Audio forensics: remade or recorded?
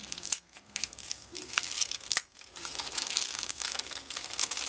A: remade